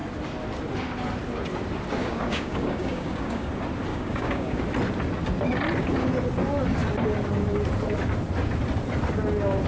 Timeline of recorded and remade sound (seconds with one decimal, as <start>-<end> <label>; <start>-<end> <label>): 0.0-2.0 recorded; 2.0-3.5 remade; 3.5-3.9 recorded; 3.9-4.6 remade; 4.6-9.7 recorded